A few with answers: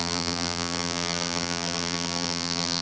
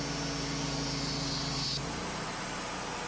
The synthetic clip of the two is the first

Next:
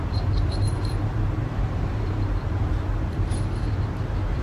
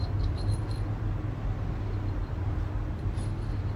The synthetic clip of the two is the first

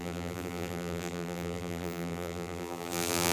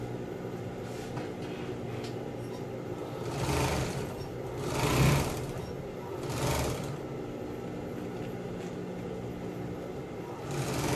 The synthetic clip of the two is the first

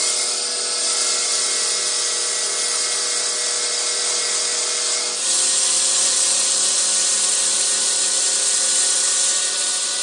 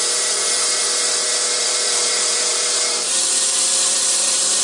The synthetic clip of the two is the second